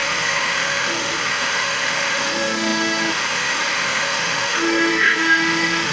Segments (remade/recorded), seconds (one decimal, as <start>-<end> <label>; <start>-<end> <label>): 0.0-5.9 remade